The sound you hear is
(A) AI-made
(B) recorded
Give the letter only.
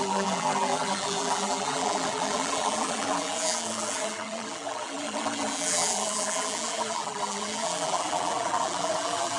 A